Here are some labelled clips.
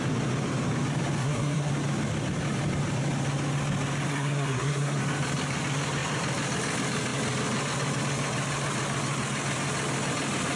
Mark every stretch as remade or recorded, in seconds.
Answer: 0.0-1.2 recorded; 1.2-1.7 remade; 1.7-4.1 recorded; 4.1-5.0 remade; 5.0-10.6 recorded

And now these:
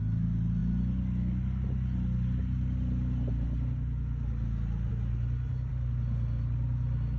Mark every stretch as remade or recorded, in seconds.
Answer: 0.0-7.2 recorded

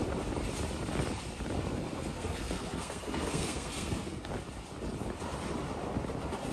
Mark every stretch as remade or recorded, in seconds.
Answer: 0.0-1.7 recorded; 1.7-4.3 remade; 4.3-6.5 recorded

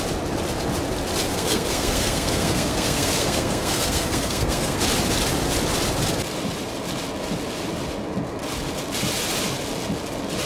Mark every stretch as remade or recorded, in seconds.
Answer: 0.0-1.3 recorded; 1.3-4.8 remade; 4.8-10.5 recorded

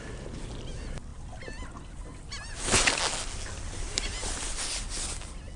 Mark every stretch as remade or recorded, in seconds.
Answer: 0.0-5.6 recorded

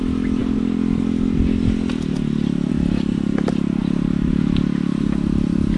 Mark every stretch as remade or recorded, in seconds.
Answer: 0.0-5.8 recorded